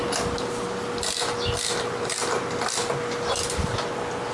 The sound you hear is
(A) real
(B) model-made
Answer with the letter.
A